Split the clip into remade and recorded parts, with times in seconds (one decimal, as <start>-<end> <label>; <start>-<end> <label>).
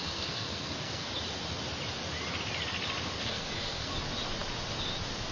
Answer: 0.0-1.1 remade; 1.1-3.2 recorded; 3.2-3.9 remade; 3.9-5.3 recorded